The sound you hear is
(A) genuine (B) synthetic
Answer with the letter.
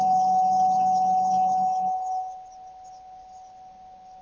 A